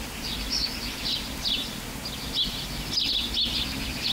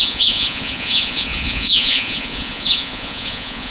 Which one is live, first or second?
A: first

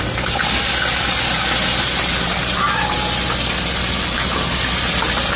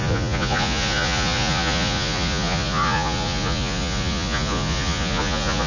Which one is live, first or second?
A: first